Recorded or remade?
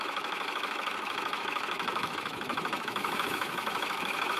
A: remade